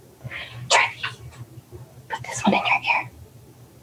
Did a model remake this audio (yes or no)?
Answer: no